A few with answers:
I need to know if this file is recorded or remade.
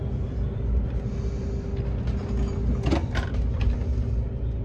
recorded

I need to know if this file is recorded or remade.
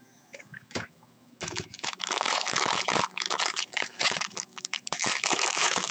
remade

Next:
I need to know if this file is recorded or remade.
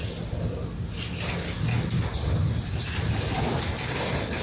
recorded